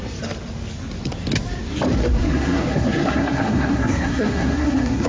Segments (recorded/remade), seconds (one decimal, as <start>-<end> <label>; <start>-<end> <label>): 0.0-2.0 recorded; 2.0-5.1 remade